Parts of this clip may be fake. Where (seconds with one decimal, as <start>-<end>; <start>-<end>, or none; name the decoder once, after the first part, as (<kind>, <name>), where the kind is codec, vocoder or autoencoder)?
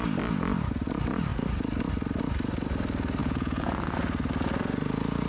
3.2-3.8 (vocoder, Vocos)